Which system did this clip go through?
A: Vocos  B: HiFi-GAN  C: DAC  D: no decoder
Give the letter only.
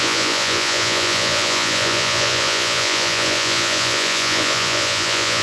A